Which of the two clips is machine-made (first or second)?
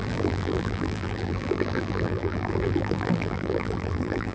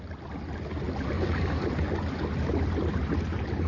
first